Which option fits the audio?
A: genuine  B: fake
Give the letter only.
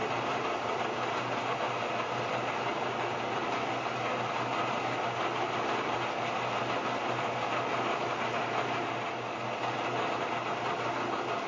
A